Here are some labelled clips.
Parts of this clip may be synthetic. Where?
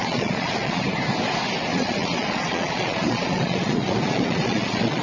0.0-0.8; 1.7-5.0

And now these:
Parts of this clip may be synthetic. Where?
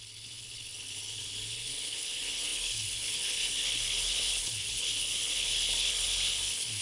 0.0-6.8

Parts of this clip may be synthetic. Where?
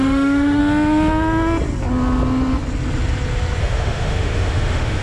0.0-0.6; 3.6-5.0